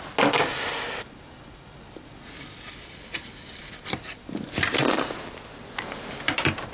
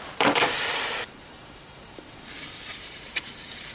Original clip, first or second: first